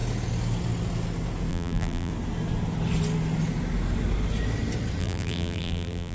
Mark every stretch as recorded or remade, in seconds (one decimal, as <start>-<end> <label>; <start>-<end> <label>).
0.0-1.5 recorded; 1.5-2.1 remade; 2.1-5.0 recorded; 5.0-6.1 remade